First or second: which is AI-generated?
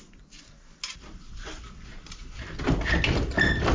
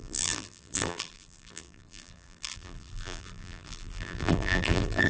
second